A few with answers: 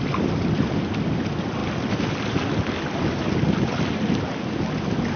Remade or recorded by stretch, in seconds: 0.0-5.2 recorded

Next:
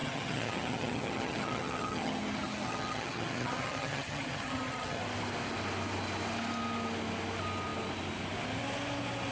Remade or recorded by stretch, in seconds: 0.0-5.0 remade; 5.0-9.3 recorded

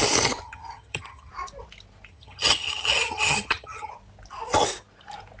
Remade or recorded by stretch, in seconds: 0.0-0.4 recorded; 0.4-1.3 remade; 1.3-2.1 recorded; 2.1-3.9 remade; 3.9-5.4 recorded

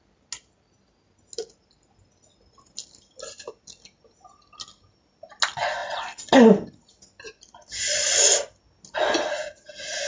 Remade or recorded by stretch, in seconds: 0.0-10.1 recorded

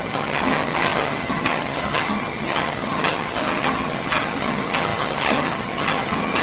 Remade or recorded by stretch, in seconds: 0.0-6.4 remade

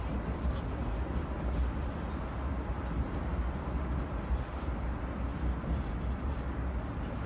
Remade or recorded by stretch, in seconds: 0.0-7.3 recorded

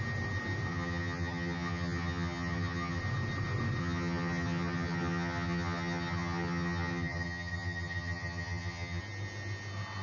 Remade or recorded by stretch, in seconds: 0.0-0.7 recorded; 0.7-3.0 remade; 3.0-3.8 recorded; 3.8-9.0 remade; 9.0-10.0 recorded

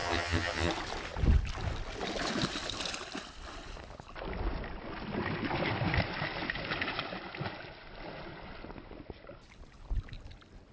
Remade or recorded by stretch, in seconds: 0.0-0.7 remade; 0.7-10.7 recorded